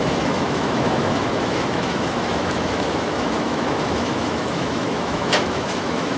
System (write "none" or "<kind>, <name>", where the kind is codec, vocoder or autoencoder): autoencoder, DAC-VAE